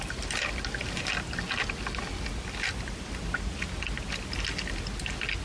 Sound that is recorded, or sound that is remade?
recorded